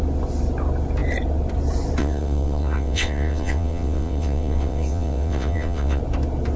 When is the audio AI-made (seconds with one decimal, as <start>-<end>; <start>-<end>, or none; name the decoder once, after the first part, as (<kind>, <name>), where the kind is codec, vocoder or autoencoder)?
2.0-6.0 (vocoder, WaveNeXt)